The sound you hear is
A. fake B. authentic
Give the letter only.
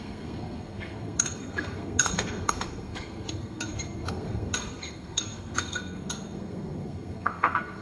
A